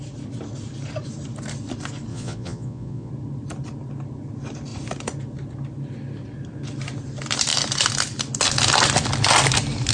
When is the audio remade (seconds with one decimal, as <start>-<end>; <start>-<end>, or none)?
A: 2.1-3.1